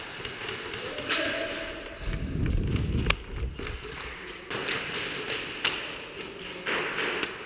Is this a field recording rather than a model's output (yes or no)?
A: yes